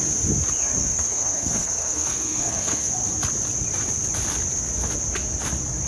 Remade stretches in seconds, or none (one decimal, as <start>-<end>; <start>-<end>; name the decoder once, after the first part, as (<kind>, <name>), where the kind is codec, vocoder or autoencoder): 0.8-2.9 (codec, SNAC)

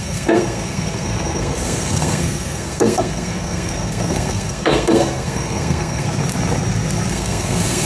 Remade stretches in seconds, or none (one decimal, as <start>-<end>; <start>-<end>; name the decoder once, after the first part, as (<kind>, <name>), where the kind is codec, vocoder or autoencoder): 0.0-6.2 (codec, SNAC); 7.1-7.9

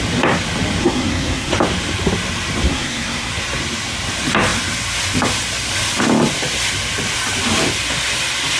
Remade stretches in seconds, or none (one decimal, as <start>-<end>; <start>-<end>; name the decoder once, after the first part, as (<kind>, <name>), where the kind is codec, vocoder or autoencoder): 0.8-1.5 (codec, SNAC); 2.7-3.3

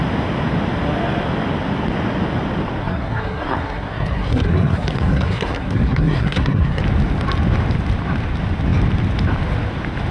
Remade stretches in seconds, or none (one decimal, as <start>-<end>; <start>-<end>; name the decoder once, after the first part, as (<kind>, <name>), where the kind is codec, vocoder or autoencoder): 2.8-6.8 (codec, SNAC)

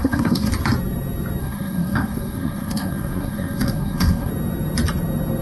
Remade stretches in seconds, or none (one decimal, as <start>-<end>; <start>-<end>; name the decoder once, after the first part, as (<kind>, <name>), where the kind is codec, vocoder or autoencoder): 0.0-0.5 (codec, SNAC); 1.4-4.3

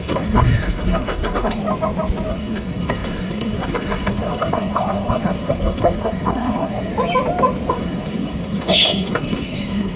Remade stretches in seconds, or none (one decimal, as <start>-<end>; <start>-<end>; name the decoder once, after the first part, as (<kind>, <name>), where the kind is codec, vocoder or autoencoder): 0.0-1.6 (codec, SNAC); 2.3-6.9; 7.7-10.0

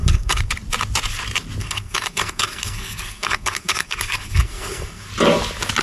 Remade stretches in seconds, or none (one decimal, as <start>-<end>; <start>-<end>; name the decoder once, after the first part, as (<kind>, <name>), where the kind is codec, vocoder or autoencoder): 0.0-0.5 (codec, SNAC); 1.6-5.1

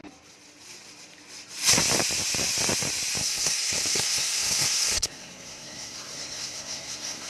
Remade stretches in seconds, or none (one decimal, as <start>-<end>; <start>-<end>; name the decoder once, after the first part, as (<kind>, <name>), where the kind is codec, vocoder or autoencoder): 3.2-7.3 (codec, SNAC)